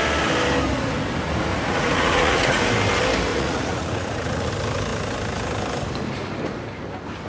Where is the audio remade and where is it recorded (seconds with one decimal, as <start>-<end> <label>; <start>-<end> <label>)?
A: 0.0-1.5 recorded; 1.5-2.6 remade; 2.6-3.3 recorded; 3.3-4.5 remade; 4.5-7.3 recorded